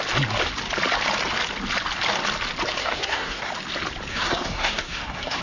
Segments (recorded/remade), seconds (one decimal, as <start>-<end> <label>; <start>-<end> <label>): 0.0-2.8 recorded; 2.8-3.5 remade; 3.5-4.1 recorded; 4.1-5.4 remade